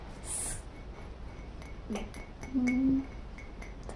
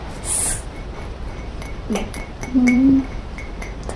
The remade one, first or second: second